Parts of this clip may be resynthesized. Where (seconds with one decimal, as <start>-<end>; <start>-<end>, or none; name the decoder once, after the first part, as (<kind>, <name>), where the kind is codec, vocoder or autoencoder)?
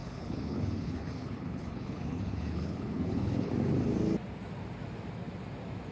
0.0-3.5 (codec, HILCodec)